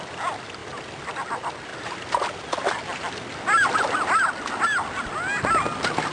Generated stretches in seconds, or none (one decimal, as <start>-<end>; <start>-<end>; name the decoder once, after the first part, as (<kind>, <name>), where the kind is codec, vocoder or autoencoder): none